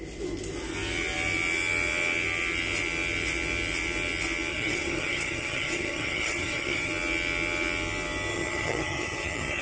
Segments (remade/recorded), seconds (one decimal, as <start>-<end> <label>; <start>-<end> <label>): 0.0-4.5 recorded; 4.5-6.9 remade; 6.9-8.3 recorded; 8.3-9.6 remade